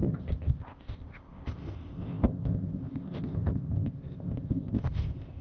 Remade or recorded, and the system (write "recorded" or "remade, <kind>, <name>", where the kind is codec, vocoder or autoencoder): remade, codec, ZipCodec